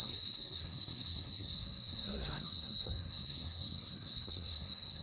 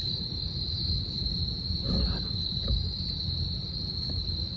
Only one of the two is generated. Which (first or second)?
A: first